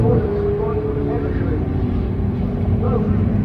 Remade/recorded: recorded